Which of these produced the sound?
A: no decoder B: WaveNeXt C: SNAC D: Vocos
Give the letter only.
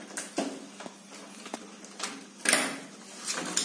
A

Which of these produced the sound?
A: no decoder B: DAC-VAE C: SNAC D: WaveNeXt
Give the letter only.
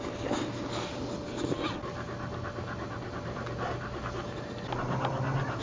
A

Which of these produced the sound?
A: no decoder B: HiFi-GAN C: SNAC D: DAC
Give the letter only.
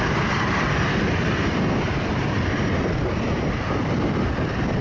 A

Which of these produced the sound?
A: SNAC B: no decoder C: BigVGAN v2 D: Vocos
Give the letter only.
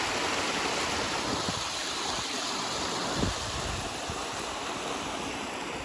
B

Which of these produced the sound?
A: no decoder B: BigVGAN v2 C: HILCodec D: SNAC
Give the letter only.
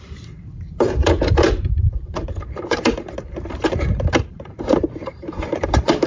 B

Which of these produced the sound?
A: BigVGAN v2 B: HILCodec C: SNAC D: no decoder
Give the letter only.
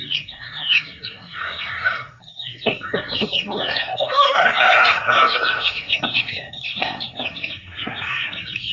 C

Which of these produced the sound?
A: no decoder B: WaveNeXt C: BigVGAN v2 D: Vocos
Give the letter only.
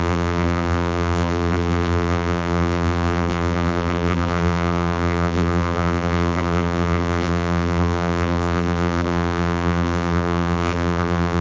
C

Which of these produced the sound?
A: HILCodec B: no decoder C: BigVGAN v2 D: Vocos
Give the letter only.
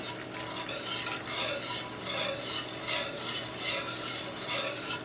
B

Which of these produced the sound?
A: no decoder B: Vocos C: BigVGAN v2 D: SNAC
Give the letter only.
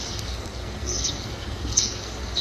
D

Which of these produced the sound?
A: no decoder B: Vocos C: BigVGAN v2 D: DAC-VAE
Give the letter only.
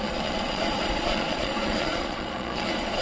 B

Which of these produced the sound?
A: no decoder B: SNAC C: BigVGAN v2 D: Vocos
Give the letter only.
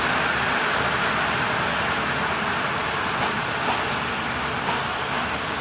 A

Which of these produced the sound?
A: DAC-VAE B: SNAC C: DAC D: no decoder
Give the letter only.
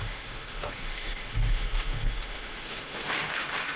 A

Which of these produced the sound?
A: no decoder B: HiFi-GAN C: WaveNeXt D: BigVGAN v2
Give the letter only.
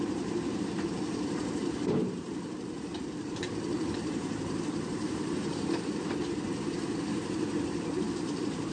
D